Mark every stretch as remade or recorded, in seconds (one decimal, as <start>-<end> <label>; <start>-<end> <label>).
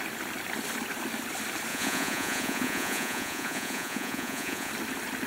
0.0-1.7 recorded; 1.7-4.7 remade; 4.7-5.3 recorded